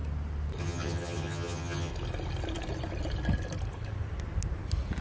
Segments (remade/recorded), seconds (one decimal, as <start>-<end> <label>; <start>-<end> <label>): 0.0-0.6 recorded; 0.6-1.9 remade; 1.9-5.0 recorded

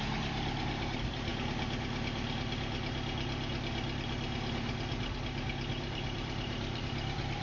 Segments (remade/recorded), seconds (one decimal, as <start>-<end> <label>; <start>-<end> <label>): 0.0-1.3 remade; 1.3-5.7 recorded; 5.7-7.4 remade

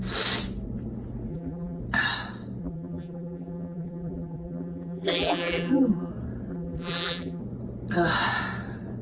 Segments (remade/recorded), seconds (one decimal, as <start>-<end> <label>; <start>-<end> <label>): 0.0-1.3 recorded; 1.3-1.8 remade; 1.8-2.6 recorded; 2.6-6.1 remade; 6.1-6.5 recorded; 6.5-7.4 remade; 7.4-9.0 recorded

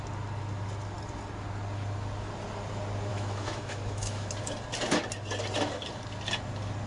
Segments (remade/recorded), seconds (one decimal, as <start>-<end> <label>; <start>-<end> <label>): 0.0-3.1 recorded; 3.1-4.3 remade; 4.3-6.9 recorded

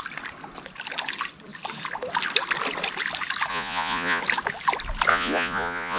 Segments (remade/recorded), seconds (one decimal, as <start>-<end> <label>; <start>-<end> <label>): 0.0-3.5 recorded; 3.5-4.2 remade; 4.2-5.1 recorded; 5.1-6.0 remade

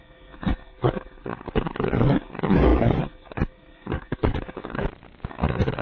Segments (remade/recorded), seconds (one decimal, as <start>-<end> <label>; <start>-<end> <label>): 0.0-4.8 remade; 4.8-5.3 recorded; 5.3-5.8 remade

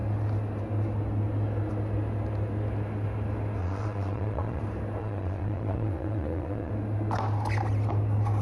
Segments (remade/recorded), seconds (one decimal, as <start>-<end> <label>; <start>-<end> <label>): 0.0-3.6 recorded; 3.6-4.6 remade; 4.6-5.0 recorded; 5.0-6.7 remade; 6.7-8.4 recorded